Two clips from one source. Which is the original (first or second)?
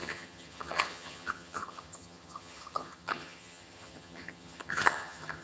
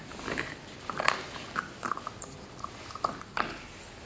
second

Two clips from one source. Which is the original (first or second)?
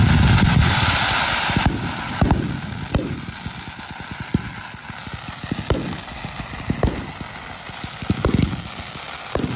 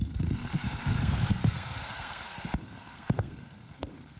first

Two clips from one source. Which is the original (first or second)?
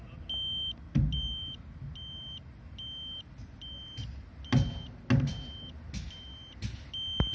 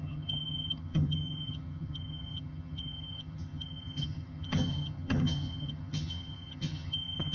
first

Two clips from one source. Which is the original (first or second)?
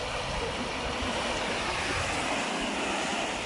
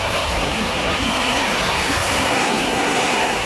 first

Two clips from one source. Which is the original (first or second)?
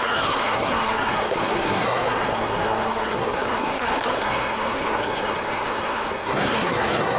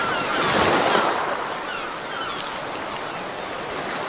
second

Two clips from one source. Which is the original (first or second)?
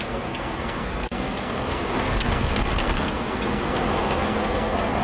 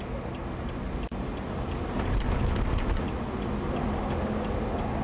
second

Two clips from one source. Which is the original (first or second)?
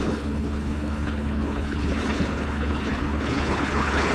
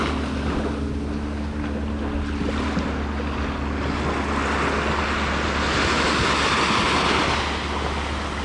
second